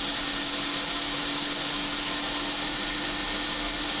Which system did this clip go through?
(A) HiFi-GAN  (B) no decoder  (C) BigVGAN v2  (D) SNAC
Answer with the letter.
B